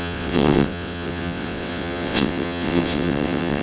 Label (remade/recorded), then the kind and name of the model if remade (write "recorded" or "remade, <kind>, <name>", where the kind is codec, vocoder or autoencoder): remade, vocoder, WaveNeXt